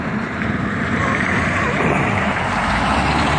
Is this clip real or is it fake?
fake